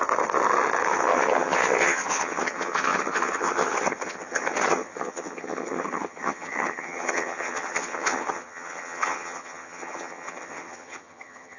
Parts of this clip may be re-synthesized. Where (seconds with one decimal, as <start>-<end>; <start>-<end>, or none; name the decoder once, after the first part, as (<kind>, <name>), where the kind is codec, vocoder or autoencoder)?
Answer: 0.9-11.6 (vocoder, HiFi-GAN)